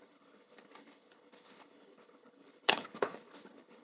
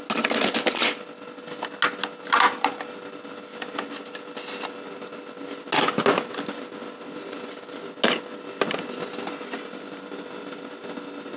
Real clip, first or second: second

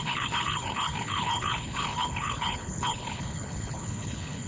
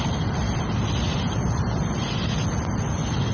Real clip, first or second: second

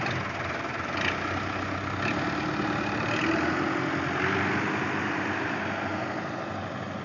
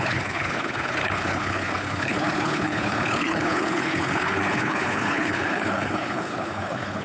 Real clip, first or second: first